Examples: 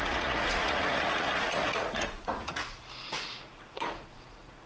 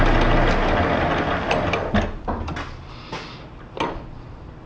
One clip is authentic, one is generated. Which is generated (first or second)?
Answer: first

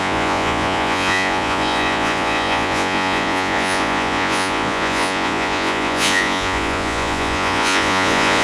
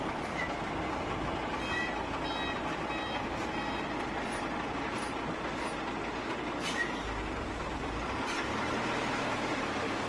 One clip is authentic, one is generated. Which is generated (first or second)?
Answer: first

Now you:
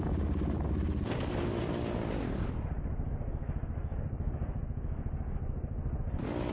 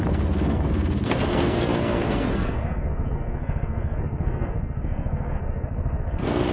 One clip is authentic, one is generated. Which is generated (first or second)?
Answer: second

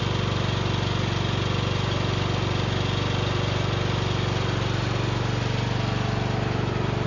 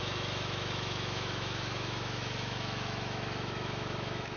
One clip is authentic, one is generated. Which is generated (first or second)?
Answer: second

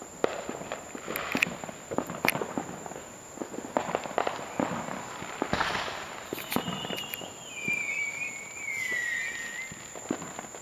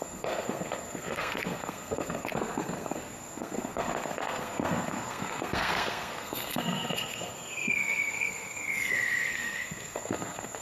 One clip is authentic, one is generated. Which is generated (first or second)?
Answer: second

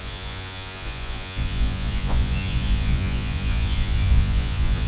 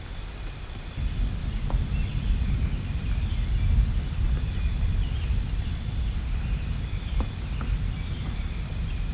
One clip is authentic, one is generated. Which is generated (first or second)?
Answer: first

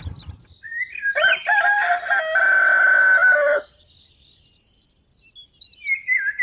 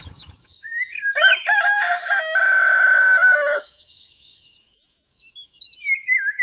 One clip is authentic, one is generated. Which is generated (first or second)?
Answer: second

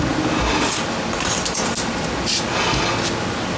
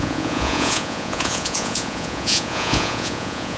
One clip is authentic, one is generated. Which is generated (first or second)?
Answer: second